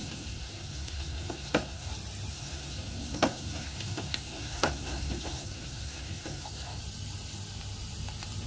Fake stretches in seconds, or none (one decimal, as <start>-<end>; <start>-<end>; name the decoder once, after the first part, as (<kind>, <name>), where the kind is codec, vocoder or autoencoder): 0.0-1.9 (codec, SNAC); 2.3-6.8